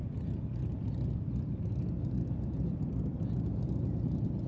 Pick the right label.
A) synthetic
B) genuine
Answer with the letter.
B